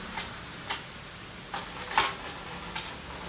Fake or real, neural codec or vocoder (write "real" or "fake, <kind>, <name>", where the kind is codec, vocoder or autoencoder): real